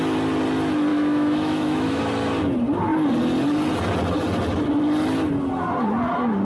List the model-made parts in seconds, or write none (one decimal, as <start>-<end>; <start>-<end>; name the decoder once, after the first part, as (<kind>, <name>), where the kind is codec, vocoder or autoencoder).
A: 0.9-2.0 (autoencoder, DAC-VAE)